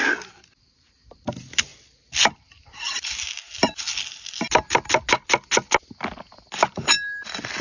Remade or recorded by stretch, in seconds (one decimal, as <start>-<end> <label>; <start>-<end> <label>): 0.0-7.6 recorded